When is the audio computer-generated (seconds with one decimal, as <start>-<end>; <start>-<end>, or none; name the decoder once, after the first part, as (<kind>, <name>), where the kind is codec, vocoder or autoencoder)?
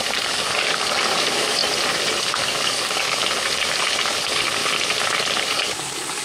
0.0-1.6 (codec, DAC); 2.2-3.2; 3.8-4.6; 5.4-6.2